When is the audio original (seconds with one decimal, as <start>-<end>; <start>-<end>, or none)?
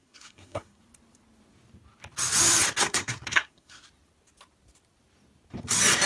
0.8-2.8; 3.8-6.1